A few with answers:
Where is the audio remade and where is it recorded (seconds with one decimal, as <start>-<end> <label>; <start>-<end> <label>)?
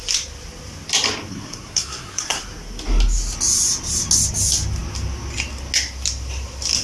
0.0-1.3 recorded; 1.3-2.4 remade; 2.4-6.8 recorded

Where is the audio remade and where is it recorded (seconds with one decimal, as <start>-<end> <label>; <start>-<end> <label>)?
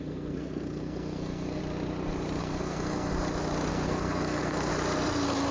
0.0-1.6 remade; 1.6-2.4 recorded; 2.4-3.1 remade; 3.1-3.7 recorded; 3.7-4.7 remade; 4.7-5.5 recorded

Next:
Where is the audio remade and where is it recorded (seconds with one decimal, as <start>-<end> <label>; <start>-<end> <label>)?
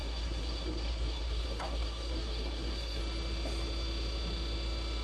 0.0-3.0 remade; 3.0-5.0 recorded